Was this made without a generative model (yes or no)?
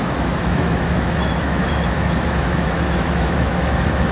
no